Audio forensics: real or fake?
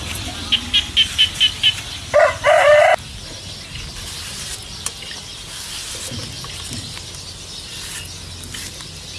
real